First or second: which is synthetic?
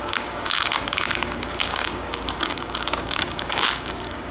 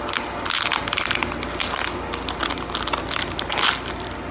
first